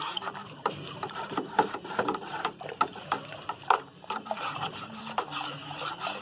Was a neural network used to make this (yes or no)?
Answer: yes